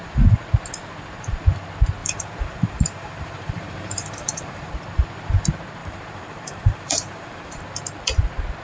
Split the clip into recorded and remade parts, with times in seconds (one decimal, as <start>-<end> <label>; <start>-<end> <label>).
0.0-2.0 recorded; 2.0-4.7 remade; 4.7-5.8 recorded; 5.8-7.6 remade; 7.6-8.6 recorded